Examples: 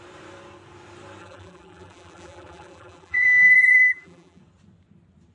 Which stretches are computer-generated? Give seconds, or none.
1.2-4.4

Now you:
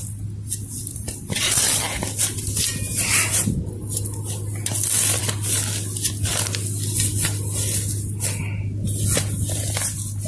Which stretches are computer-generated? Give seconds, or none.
none

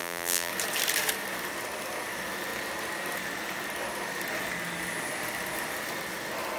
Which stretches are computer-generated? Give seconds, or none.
0.0-0.5

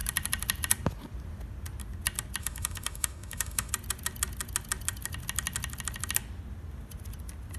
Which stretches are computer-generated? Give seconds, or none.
2.4-3.7

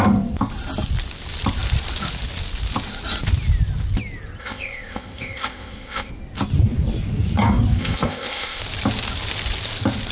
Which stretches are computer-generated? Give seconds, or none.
4.4-6.1; 7.8-8.6